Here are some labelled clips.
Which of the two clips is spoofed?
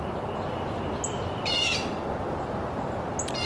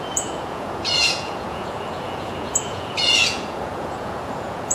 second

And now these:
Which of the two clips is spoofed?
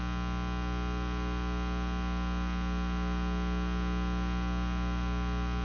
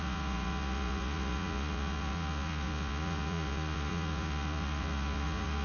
second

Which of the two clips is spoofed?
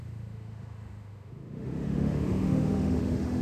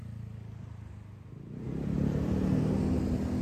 first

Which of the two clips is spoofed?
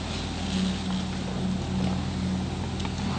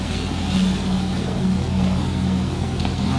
second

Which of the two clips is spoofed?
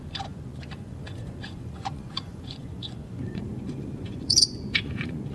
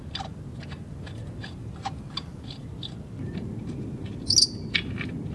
first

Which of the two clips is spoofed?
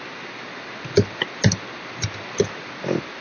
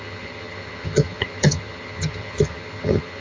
second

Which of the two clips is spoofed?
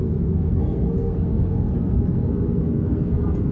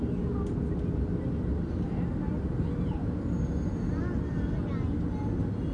first